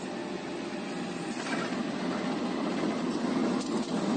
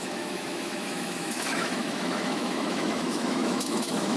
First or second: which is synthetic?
second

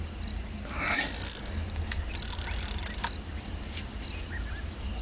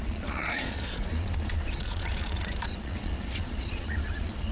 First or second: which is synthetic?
second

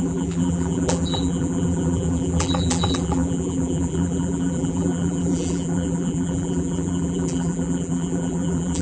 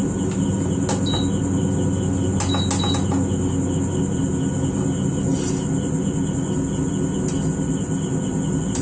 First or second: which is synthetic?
first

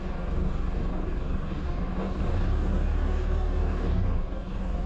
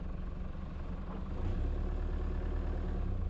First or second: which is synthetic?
first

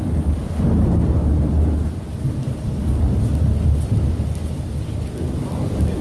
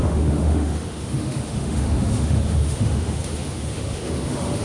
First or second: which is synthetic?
second